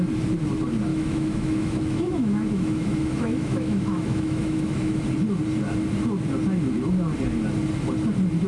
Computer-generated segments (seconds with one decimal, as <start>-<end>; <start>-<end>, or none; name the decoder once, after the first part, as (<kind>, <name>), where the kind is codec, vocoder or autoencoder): 0.9-5.0 (autoencoder, DAC-VAE)